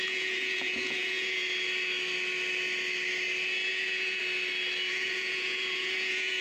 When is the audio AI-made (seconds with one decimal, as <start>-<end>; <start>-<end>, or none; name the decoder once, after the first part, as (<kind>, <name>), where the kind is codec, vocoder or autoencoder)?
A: 0.0-1.4 (vocoder, Vocos); 3.7-4.2; 4.9-6.4